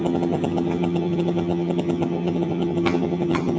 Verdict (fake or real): fake